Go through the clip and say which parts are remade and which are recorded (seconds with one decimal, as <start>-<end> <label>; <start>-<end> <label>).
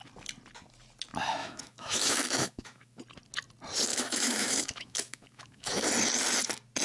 0.0-1.4 recorded; 1.4-3.0 remade; 3.0-3.9 recorded; 3.9-5.9 remade; 5.9-6.8 recorded